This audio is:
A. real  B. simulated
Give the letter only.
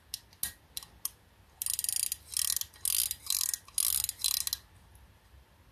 A